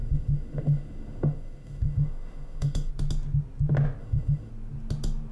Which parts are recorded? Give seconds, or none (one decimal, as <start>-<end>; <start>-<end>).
2.9-4.0; 4.5-5.3